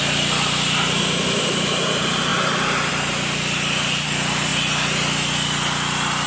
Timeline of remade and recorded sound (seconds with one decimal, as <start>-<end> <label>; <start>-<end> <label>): 0.0-2.3 remade; 2.3-2.9 recorded; 2.9-4.5 remade; 4.5-6.3 recorded

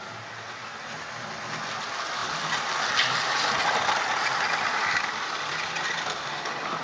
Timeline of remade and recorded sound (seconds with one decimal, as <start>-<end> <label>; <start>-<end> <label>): 0.0-6.8 recorded

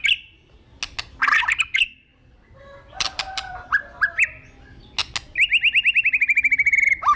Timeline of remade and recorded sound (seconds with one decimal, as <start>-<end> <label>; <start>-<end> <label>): 0.0-2.1 recorded; 2.1-3.7 remade; 3.7-7.2 recorded

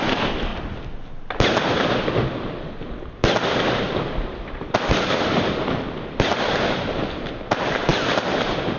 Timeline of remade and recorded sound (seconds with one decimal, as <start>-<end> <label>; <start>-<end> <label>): 0.0-0.5 remade; 0.5-3.9 recorded; 3.9-8.8 remade

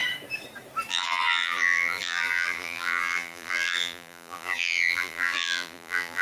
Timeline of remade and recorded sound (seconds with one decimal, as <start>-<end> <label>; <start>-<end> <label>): 0.0-0.9 recorded; 0.9-6.2 remade

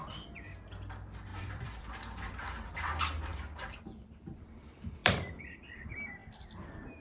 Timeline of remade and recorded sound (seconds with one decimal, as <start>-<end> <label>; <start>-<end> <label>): 0.0-1.3 recorded; 1.3-2.7 remade; 2.7-3.3 recorded; 3.3-4.1 remade; 4.1-5.0 recorded; 5.0-5.6 remade; 5.6-7.0 recorded